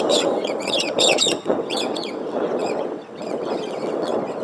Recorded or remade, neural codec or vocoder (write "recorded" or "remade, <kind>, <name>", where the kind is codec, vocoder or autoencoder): remade, vocoder, WaveNeXt